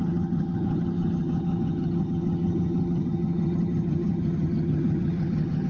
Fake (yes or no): yes